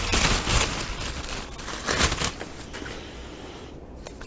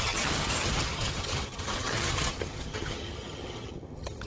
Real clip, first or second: first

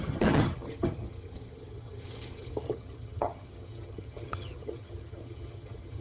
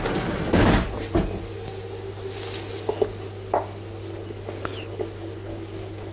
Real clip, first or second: second